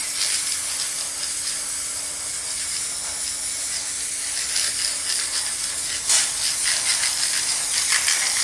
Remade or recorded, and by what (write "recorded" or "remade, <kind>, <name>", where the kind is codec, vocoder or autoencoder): recorded